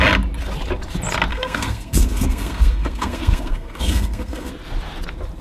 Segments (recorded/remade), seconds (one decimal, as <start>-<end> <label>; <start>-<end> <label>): 0.0-1.3 recorded; 1.3-4.5 remade; 4.5-5.4 recorded